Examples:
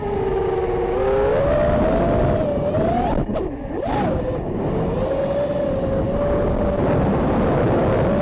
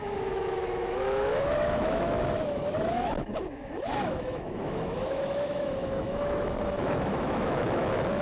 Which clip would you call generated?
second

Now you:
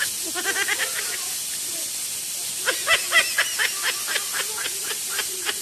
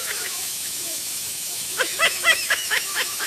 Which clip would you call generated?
second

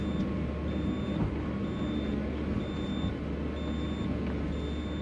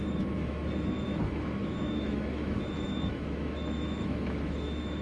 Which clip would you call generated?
second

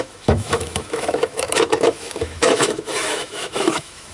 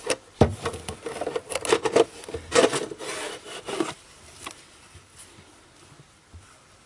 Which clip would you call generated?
first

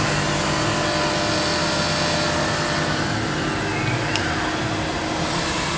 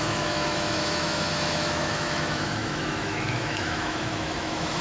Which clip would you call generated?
second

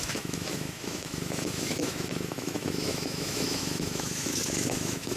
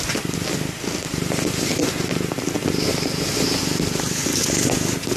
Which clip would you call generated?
first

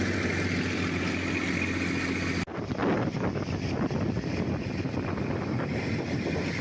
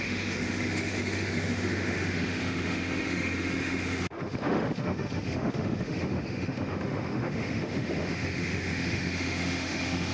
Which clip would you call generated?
second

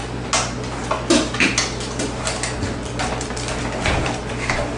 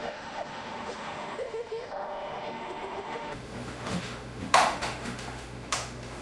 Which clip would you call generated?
second